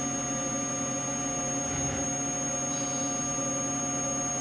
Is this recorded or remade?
recorded